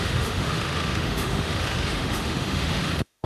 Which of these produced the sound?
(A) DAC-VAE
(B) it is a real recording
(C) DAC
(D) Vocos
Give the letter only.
A